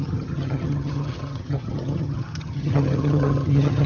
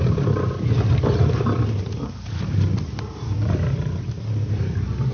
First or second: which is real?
second